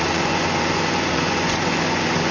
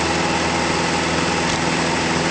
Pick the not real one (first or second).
first